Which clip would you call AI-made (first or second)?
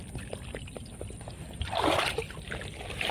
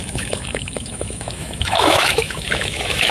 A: second